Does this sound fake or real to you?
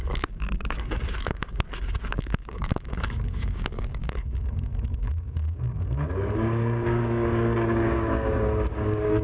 fake